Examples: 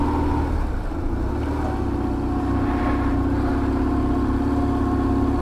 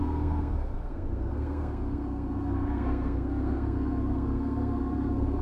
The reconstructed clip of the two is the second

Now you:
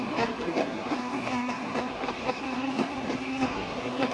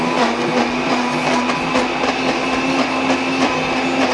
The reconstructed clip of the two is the first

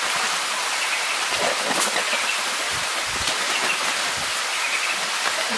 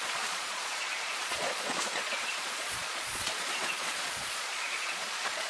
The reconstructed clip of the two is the second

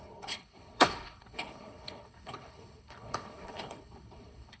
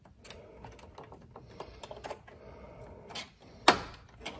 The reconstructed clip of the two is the first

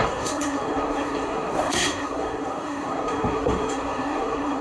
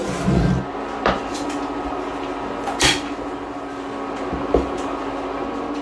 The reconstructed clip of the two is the first